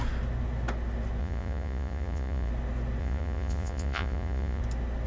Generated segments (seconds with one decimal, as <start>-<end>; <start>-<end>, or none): 1.2-2.5; 3.0-4.6